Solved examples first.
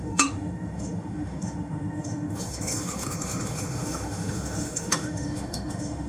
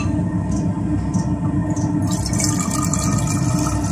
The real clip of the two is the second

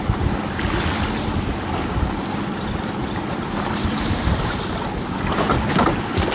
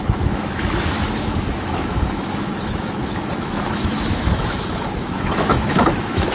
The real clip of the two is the first